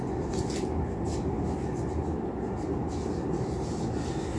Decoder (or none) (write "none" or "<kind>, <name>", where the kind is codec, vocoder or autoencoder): none